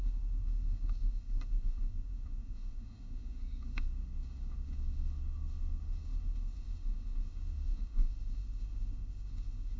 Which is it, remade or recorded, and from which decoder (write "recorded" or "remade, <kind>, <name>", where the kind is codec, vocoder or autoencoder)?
remade, autoencoder, DAC-VAE